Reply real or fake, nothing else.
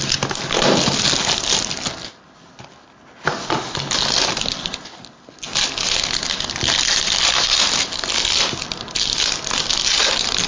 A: real